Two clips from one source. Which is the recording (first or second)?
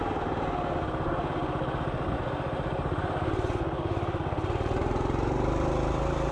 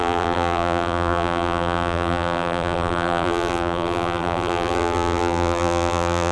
first